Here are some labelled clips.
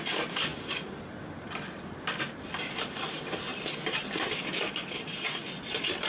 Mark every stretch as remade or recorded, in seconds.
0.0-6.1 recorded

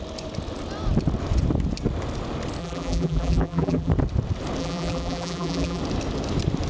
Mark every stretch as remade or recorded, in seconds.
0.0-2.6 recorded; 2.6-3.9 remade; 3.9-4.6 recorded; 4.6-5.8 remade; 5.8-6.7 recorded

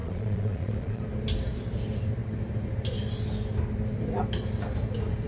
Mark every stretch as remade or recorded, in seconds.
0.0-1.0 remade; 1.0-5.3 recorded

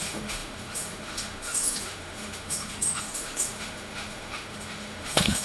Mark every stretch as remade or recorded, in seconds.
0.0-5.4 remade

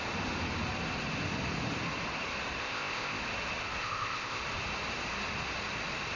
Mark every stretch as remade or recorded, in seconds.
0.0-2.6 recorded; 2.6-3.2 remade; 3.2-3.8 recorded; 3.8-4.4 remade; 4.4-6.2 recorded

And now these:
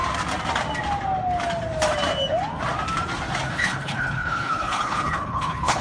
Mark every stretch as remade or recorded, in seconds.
0.0-3.5 recorded; 3.5-5.8 remade